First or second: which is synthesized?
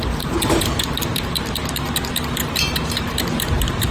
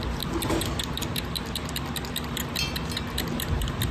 first